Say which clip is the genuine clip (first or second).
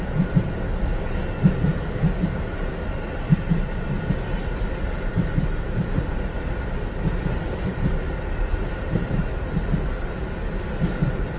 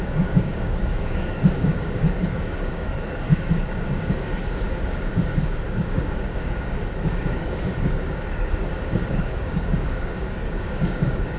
first